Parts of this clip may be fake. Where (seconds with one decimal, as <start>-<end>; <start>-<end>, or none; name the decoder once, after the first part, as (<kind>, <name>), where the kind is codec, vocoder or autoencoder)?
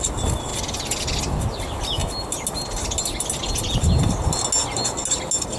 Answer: none